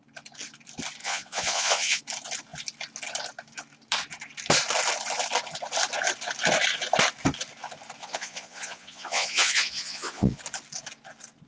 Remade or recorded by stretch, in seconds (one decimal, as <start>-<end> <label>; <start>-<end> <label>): 0.0-1.0 recorded; 1.0-2.0 remade; 2.0-8.0 recorded; 8.0-10.4 remade; 10.4-11.5 recorded